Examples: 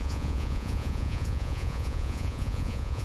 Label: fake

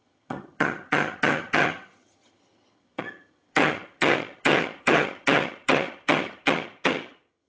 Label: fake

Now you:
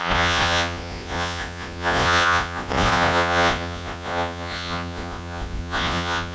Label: fake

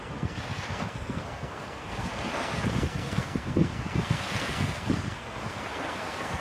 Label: fake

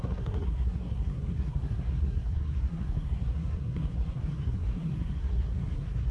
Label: fake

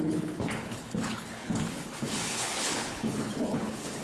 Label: fake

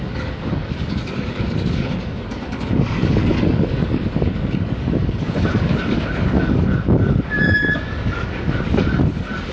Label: fake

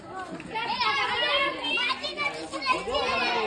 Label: real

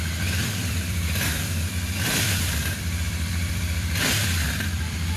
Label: fake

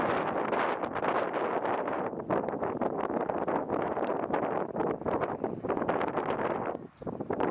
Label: real